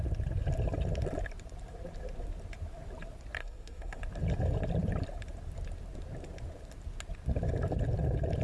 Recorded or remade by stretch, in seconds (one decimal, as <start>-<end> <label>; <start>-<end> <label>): 0.0-3.4 recorded; 3.4-4.0 remade; 4.0-8.4 recorded